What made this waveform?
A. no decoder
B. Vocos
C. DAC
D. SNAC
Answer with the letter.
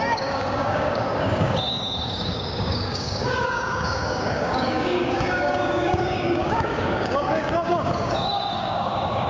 C